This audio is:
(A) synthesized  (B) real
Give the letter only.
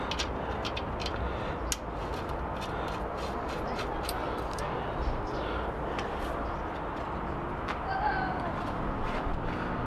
B